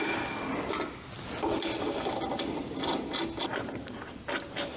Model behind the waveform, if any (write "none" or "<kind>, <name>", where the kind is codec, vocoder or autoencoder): none